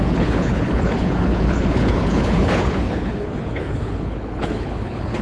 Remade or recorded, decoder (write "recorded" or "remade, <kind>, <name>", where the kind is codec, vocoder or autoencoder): remade, codec, HILCodec